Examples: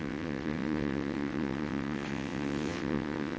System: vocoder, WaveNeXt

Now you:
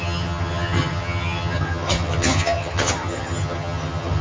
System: vocoder, HiFi-GAN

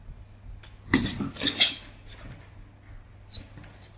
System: none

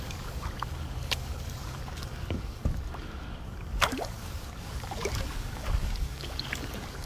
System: codec, DAC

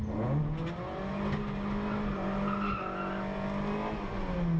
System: none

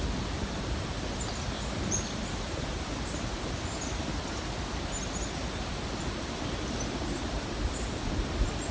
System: none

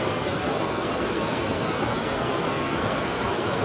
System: codec, SNAC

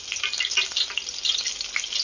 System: none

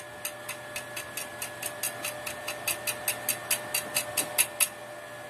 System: none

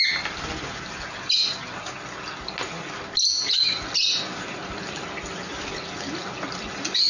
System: none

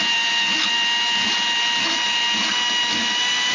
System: none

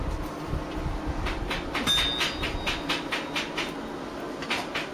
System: none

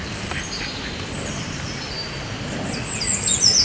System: none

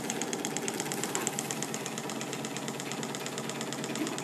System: none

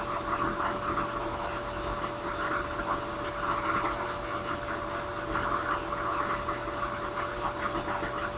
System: none